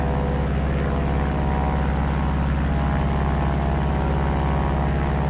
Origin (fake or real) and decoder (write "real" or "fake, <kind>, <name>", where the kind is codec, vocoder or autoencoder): real